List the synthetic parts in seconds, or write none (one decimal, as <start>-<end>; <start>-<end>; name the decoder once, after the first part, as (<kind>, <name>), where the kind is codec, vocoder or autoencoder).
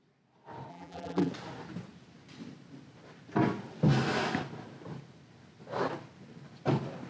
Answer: 0.7-1.3 (vocoder, BigVGAN v2)